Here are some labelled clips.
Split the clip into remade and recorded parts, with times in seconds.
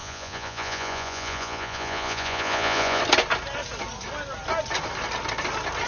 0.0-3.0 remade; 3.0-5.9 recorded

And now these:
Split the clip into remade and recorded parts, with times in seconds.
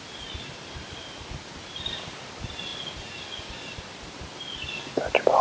0.0-5.4 recorded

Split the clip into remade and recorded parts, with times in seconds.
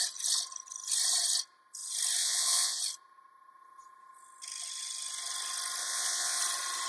0.0-2.2 recorded; 2.2-2.8 remade; 2.8-5.8 recorded; 5.8-6.4 remade; 6.4-6.9 recorded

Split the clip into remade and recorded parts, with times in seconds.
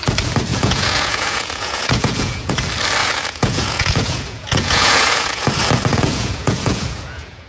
0.0-0.5 recorded; 0.5-2.5 remade; 2.5-3.0 recorded; 3.0-5.5 remade; 5.5-5.9 recorded; 5.9-7.5 remade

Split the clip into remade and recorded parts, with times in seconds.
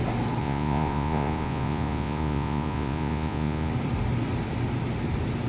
0.0-0.4 recorded; 0.4-3.7 remade; 3.7-5.5 recorded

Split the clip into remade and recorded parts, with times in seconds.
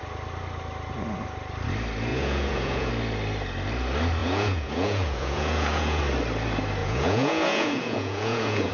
0.0-2.1 recorded; 2.1-2.9 remade; 2.9-4.2 recorded; 4.2-6.0 remade; 6.0-6.8 recorded; 6.8-8.7 remade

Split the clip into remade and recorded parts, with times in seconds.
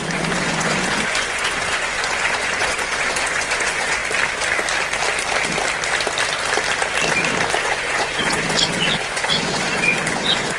0.0-4.0 remade; 4.0-7.6 recorded; 7.6-10.6 remade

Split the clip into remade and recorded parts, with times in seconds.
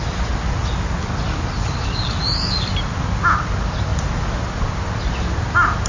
0.0-5.9 recorded